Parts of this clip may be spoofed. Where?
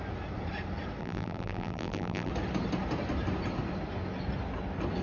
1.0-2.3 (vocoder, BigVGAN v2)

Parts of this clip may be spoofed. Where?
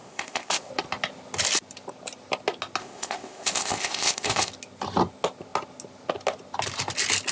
0.0-0.7 (codec, ZipCodec); 2.8-4.5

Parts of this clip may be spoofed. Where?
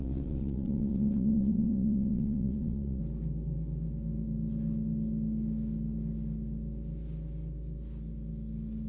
0.0-3.0 (vocoder, WaveNeXt)